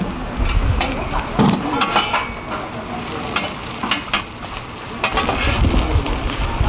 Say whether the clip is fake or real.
real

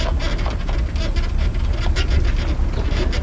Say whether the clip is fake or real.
real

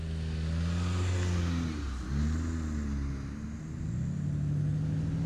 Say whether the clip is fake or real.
real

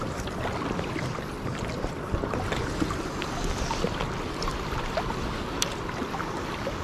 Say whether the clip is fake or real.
real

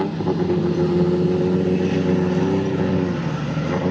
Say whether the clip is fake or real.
real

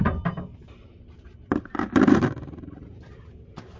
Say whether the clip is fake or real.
fake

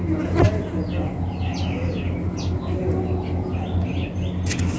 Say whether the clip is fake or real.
real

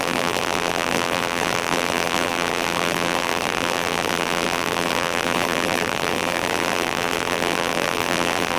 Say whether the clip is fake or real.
fake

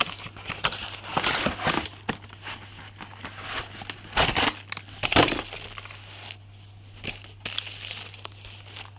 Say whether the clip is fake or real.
real